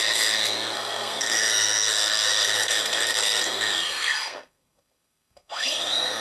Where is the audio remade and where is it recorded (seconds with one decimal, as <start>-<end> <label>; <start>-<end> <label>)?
0.0-6.2 remade